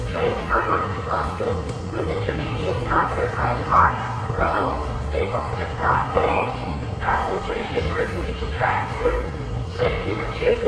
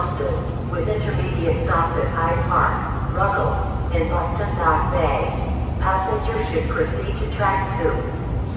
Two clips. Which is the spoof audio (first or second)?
first